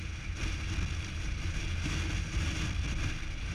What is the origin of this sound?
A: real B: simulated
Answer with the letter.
A